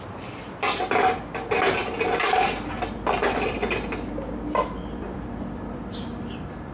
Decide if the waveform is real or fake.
real